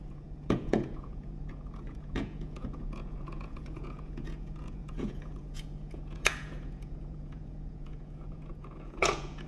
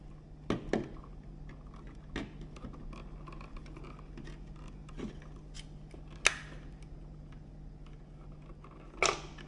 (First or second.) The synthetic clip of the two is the first